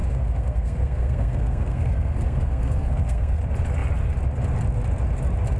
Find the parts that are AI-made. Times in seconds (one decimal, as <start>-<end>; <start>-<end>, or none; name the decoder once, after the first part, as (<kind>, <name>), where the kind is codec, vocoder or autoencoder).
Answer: 0.0-3.4 (codec, SNAC)